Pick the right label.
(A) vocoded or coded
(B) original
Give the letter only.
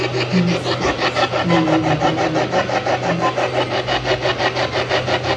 B